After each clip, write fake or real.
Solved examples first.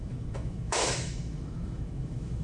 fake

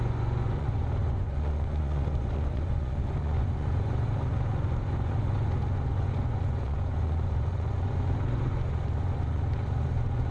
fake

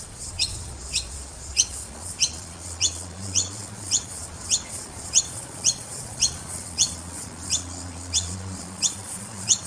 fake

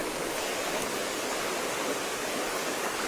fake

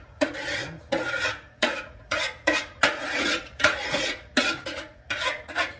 fake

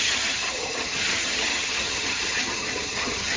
fake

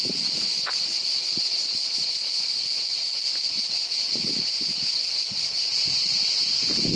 real